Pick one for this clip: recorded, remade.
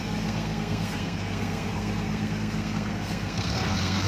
remade